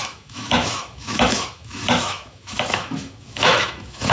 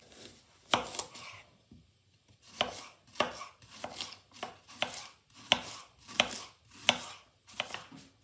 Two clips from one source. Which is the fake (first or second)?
first